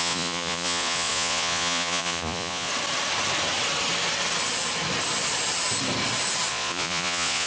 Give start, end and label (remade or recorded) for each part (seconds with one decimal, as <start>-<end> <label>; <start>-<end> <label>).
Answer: 0.0-2.7 remade; 2.7-6.5 recorded; 6.5-7.5 remade